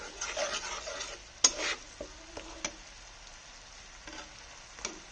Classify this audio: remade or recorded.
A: recorded